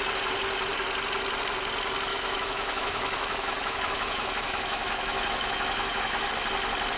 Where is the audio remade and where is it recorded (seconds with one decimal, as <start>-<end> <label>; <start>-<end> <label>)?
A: 0.0-2.1 recorded; 2.1-6.3 remade; 6.3-7.0 recorded